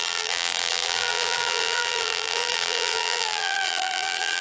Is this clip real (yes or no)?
no